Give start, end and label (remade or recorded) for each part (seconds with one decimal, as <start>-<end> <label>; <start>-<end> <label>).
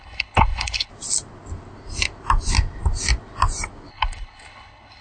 0.0-0.9 remade; 0.9-3.9 recorded; 3.9-5.0 remade